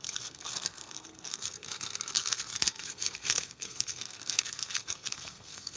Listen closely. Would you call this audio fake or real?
fake